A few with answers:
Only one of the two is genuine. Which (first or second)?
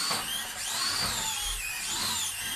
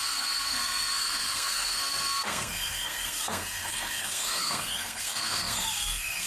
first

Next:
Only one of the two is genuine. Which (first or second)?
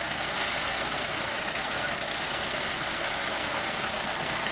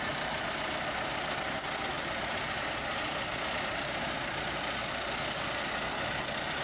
second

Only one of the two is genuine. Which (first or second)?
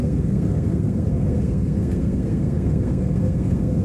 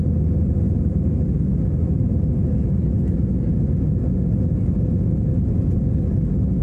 second